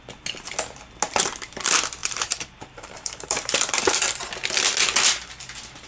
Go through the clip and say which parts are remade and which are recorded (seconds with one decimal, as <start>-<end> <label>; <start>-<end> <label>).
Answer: 0.0-2.0 recorded; 2.0-4.0 remade; 4.0-5.9 recorded